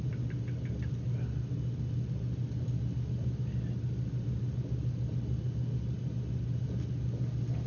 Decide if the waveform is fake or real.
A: real